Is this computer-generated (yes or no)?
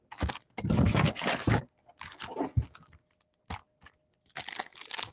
no